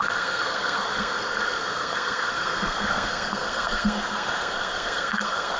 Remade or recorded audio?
remade